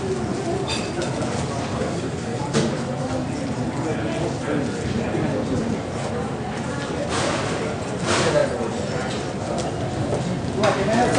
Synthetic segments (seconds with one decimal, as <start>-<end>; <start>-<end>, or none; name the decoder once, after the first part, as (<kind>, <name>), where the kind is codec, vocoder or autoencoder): 1.7-2.4 (codec, SNAC)